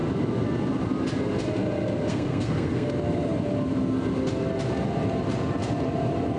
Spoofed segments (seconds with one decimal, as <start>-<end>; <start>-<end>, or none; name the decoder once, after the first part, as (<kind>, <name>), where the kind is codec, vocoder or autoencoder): 2.1-2.9 (codec, SNAC)